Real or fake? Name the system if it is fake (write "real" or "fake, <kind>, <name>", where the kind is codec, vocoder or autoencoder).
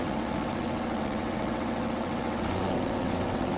fake, vocoder, WaveNeXt